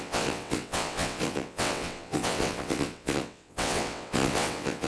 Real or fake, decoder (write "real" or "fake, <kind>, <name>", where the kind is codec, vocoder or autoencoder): fake, vocoder, WaveNeXt